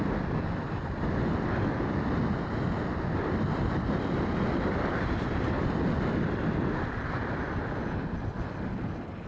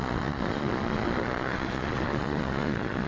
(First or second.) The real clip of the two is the first